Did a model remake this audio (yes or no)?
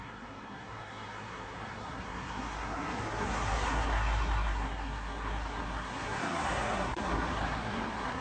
yes